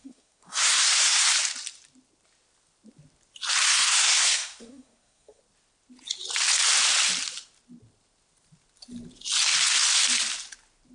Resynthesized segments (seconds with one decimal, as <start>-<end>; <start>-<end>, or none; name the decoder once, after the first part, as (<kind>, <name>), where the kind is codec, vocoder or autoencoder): 0.0-1.3 (codec, SNAC); 3.7-5.4